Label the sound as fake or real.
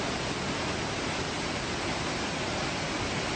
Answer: real